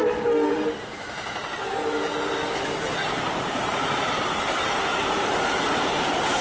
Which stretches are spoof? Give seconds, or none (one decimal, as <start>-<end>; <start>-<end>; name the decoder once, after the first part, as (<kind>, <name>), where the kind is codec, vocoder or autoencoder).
4.9-6.4 (vocoder, BigVGAN v2)